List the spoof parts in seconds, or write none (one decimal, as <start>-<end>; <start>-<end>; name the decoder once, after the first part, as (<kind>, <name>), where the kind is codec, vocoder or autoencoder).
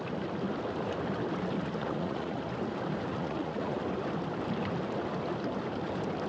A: 1.8-2.4 (vocoder, Vocos); 3.1-3.8